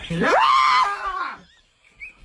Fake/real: real